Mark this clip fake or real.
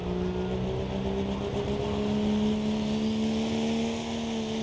real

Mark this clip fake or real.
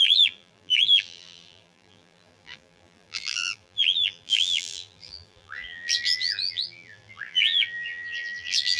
fake